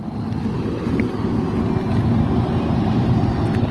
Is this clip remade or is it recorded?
recorded